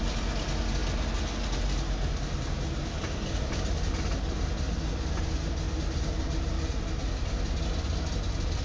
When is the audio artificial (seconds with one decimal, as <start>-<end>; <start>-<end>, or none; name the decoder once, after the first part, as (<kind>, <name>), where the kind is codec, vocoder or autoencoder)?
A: none